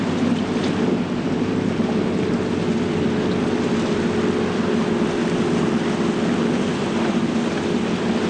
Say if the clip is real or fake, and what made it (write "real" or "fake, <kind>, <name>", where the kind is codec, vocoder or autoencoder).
real